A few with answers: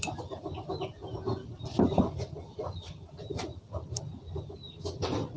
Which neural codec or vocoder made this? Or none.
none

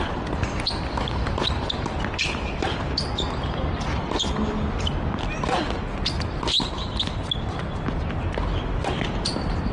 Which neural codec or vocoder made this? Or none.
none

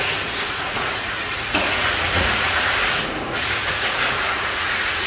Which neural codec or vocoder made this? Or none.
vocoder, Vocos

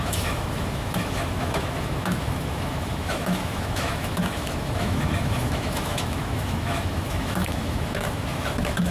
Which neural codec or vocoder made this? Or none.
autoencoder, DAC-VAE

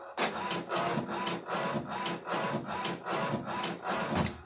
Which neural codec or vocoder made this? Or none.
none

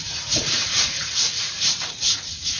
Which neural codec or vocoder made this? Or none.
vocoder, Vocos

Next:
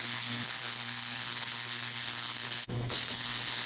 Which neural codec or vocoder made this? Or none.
codec, SNAC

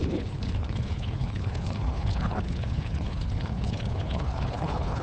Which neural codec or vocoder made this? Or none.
codec, HILCodec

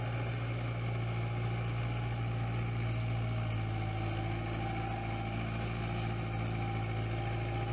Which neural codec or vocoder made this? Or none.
none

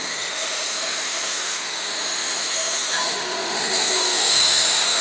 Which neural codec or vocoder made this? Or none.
autoencoder, DAC-VAE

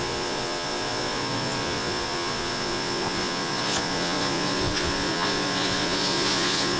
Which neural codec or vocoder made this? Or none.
vocoder, Vocos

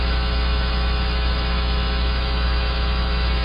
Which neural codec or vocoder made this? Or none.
autoencoder, DAC-VAE